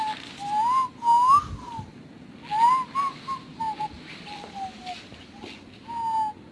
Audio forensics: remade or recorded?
recorded